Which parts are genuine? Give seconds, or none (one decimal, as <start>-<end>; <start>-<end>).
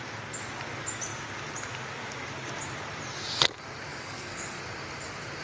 0.0-3.9; 4.6-5.4